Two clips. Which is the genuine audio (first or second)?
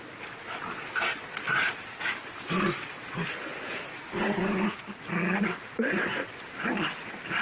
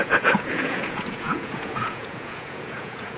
first